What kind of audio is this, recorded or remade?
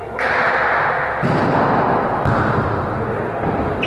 recorded